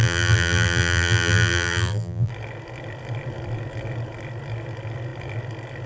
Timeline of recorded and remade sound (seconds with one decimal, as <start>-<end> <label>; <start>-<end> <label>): 0.0-2.3 remade; 2.3-5.9 recorded